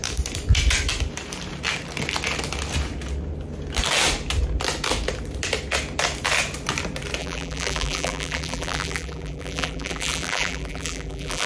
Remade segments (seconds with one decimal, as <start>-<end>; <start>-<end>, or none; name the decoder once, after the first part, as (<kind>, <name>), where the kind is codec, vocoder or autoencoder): 7.2-11.5 (vocoder, BigVGAN v2)